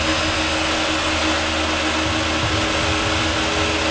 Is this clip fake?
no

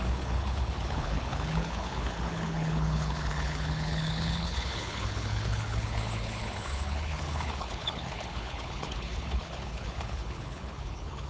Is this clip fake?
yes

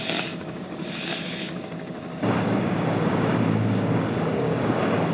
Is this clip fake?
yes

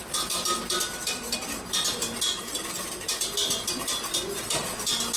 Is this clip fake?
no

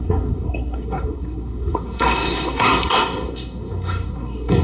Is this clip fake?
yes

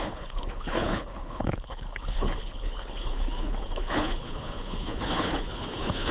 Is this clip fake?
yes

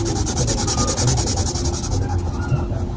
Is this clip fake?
no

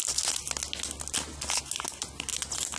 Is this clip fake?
no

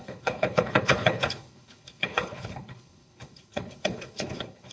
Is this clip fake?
yes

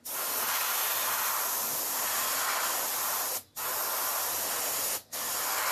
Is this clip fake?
no